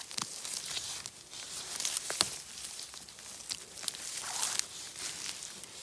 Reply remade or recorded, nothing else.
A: recorded